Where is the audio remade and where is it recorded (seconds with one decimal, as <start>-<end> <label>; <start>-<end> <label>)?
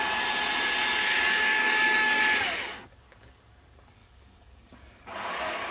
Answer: 0.0-1.1 recorded; 1.1-2.2 remade; 2.2-4.0 recorded; 4.0-5.7 remade